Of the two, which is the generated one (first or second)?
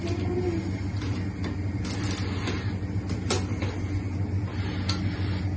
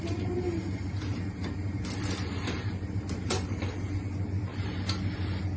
second